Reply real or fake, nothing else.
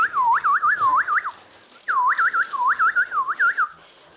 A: real